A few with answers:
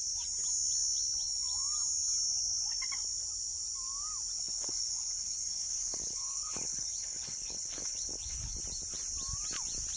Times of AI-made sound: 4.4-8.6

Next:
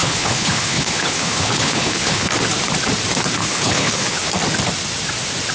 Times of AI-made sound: 0.0-2.3; 3.4-4.3

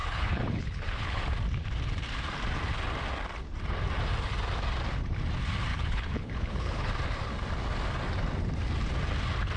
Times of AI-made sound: 0.0-1.2; 5.7-6.9